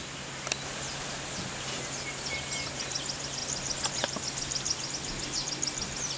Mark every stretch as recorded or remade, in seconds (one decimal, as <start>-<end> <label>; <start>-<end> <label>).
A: 0.0-6.2 recorded